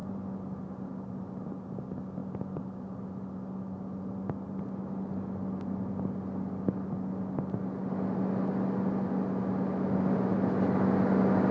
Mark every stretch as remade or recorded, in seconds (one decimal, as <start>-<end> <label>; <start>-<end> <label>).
0.0-11.5 recorded